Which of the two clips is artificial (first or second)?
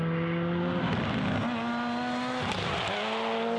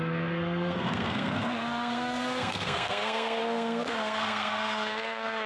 second